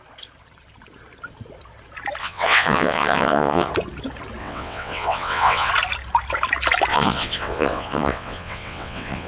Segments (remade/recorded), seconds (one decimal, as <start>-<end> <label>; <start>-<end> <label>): 0.0-2.2 recorded; 2.2-3.7 remade; 3.7-4.4 recorded; 4.4-5.7 remade; 5.7-6.9 recorded; 6.9-9.3 remade